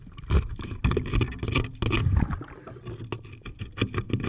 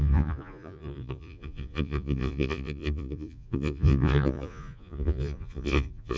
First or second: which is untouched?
first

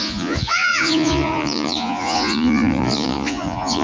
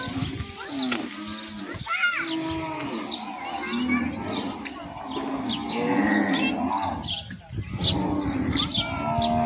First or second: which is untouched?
second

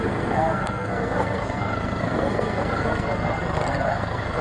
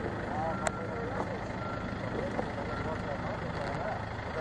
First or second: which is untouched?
second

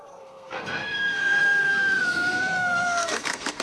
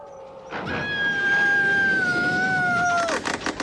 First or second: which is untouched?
second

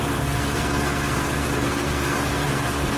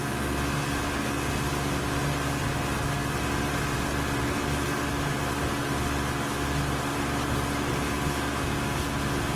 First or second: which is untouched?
second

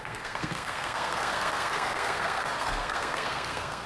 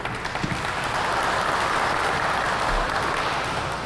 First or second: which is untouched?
second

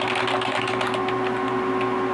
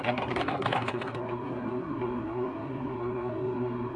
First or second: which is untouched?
first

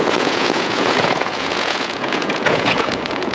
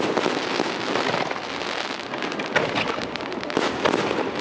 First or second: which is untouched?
second